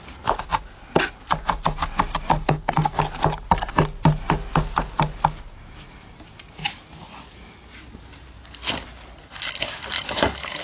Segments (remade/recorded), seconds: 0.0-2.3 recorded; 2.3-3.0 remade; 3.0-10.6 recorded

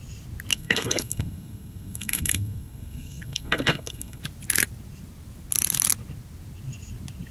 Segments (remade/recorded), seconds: 0.0-0.5 recorded; 0.5-4.2 remade; 4.2-7.3 recorded

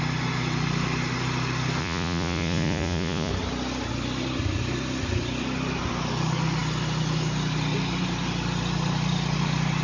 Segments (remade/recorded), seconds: 0.0-1.8 recorded; 1.8-3.3 remade; 3.3-9.8 recorded

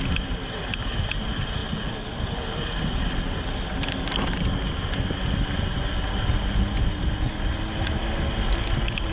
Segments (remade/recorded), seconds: 0.0-9.1 recorded

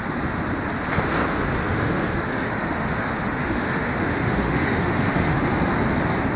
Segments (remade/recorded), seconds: 0.0-1.6 recorded; 1.6-5.4 remade; 5.4-6.4 recorded

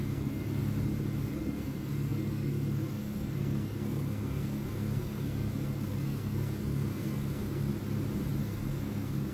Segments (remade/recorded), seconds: 0.0-0.6 remade; 0.6-1.2 recorded; 1.2-7.7 remade; 7.7-8.4 recorded; 8.4-9.3 remade

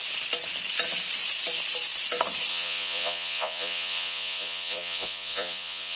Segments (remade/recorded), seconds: 0.0-2.5 recorded; 2.5-6.0 remade

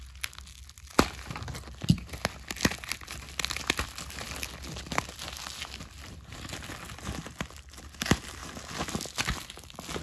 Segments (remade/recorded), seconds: 0.0-10.0 recorded